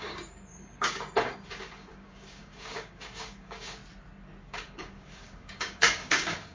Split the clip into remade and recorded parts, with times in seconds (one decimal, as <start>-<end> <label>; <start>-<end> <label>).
0.0-3.8 remade; 3.8-4.4 recorded; 4.4-6.5 remade